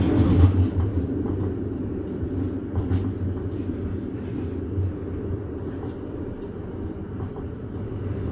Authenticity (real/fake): real